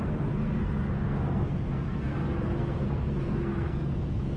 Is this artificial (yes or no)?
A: yes